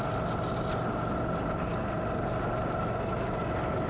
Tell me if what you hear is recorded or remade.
recorded